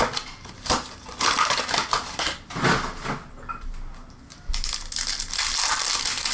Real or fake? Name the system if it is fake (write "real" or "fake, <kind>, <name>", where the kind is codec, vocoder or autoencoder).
real